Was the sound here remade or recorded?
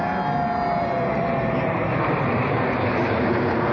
recorded